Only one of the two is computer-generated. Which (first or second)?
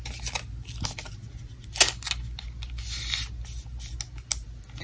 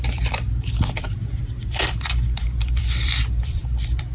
second